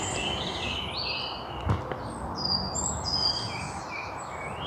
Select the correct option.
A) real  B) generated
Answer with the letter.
A